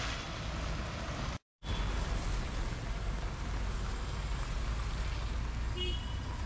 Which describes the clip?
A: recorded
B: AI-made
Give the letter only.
A